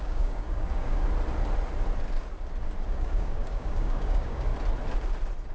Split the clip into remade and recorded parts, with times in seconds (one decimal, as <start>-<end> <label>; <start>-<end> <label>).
0.0-1.0 remade; 1.0-2.9 recorded; 2.9-4.5 remade; 4.5-5.5 recorded